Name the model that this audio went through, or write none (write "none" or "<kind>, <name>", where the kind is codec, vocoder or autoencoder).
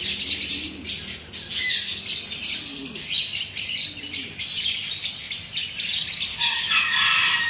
none